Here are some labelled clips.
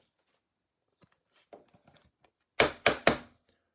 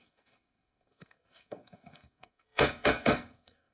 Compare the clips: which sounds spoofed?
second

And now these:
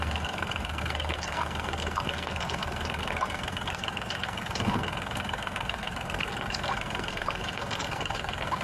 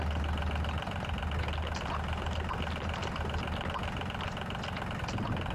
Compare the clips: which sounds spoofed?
first